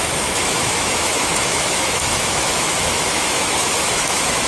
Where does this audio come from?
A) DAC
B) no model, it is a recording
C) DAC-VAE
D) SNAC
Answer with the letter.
C